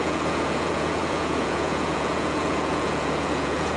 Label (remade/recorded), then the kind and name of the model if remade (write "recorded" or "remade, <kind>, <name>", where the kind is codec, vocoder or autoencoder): remade, vocoder, Vocos